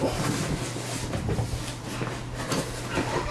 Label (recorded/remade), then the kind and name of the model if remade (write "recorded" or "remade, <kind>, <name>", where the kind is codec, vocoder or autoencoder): recorded